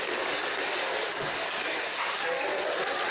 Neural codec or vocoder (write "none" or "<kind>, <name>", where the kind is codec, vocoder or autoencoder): none